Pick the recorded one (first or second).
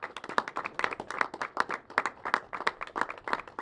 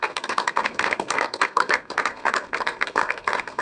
first